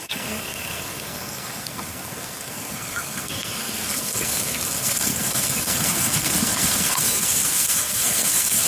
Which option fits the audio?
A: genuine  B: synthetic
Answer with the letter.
B